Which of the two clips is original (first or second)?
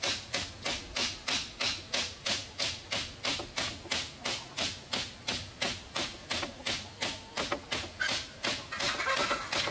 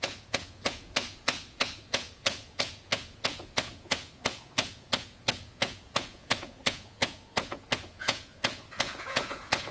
first